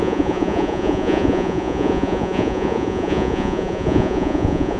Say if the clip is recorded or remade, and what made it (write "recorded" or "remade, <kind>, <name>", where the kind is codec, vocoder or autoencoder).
remade, vocoder, Vocos